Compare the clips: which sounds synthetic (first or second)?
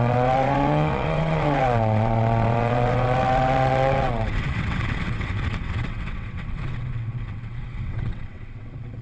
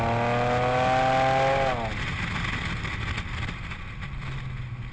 first